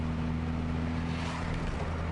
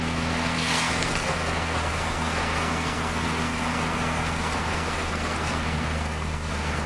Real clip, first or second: first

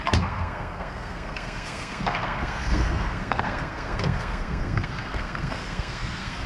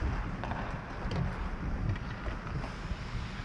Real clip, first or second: second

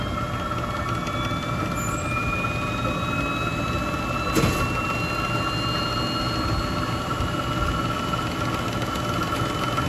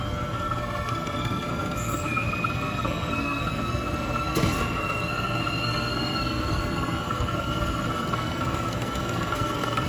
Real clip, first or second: first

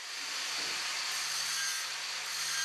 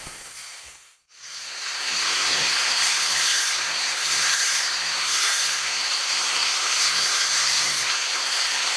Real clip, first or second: first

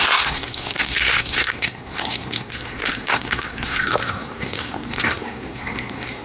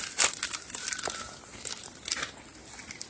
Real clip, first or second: second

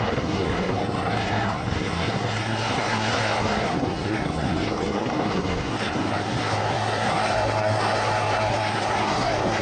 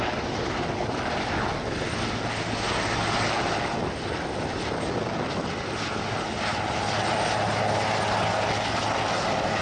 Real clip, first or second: second